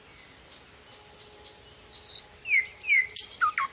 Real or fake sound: real